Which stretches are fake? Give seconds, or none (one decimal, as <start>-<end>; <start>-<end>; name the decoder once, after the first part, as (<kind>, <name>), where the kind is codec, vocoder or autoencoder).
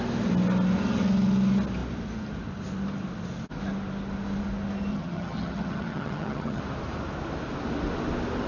4.9-6.6 (vocoder, HiFi-GAN)